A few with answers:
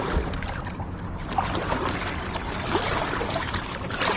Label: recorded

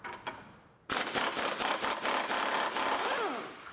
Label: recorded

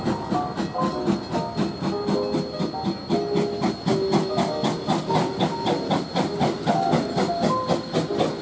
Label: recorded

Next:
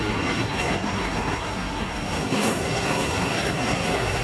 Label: remade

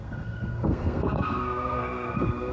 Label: remade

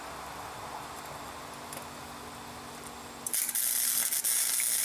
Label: recorded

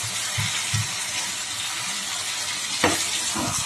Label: recorded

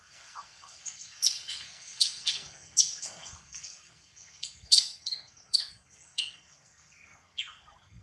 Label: remade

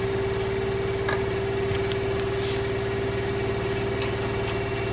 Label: recorded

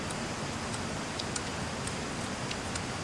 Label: recorded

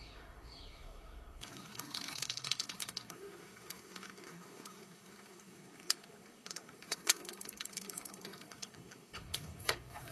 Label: remade